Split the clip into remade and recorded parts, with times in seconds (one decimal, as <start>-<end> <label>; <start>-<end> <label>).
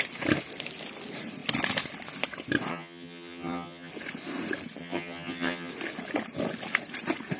0.0-2.7 recorded; 2.7-3.9 remade; 3.9-4.8 recorded; 4.8-5.7 remade; 5.7-7.4 recorded